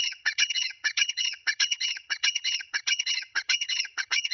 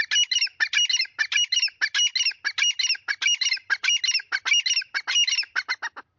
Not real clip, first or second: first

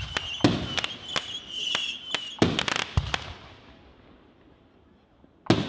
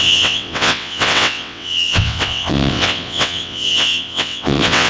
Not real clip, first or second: second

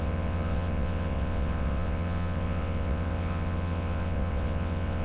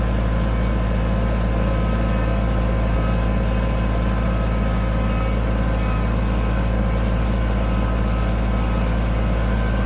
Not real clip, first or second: first